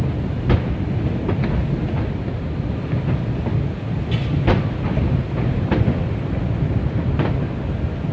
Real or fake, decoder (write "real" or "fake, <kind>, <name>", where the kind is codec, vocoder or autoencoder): real